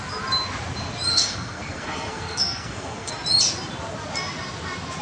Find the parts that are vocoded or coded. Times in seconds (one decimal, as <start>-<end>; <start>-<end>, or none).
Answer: 1.1-3.1